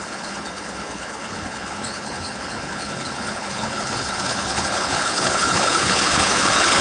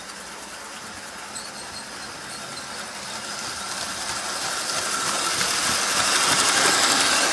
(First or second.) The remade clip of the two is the first